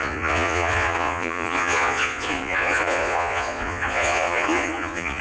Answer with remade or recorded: remade